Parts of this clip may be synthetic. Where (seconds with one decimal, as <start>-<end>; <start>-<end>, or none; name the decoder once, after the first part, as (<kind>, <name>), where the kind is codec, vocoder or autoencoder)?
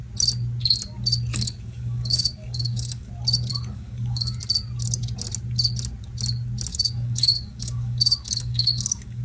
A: 1.3-3.1 (codec, DAC); 3.5-4.4; 6.7-9.2